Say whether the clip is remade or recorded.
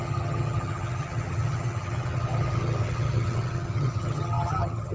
remade